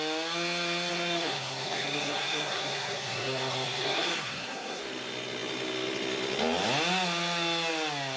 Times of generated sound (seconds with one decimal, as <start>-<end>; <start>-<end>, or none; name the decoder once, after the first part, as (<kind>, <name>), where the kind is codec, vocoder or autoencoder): 0.9-4.8 (codec, SNAC)

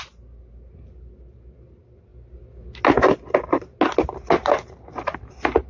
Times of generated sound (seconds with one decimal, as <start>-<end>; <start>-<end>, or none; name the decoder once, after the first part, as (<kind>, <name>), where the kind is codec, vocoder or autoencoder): none

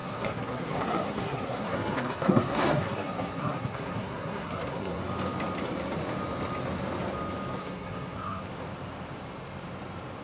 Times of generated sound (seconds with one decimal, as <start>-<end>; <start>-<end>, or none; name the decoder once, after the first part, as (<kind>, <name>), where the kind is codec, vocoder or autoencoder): 0.0-5.0 (codec, SNAC); 7.6-8.4

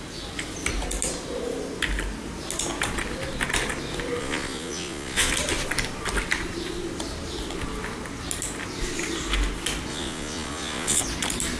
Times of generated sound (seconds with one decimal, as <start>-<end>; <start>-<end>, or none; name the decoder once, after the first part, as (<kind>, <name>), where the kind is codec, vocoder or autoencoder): 4.2-5.3 (vocoder, Vocos); 9.9-11.0